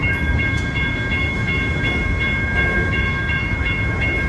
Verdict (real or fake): fake